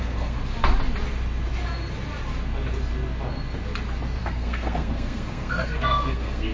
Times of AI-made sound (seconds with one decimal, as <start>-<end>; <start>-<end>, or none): 0.0-0.4; 4.2-6.5